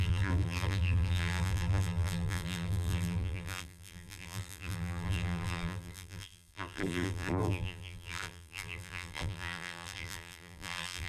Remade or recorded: remade